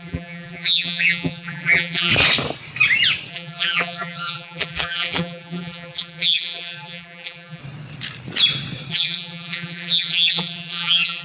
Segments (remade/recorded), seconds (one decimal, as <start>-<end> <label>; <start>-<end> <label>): 0.0-2.1 remade; 2.1-3.3 recorded; 3.3-7.6 remade; 7.6-8.9 recorded; 8.9-11.2 remade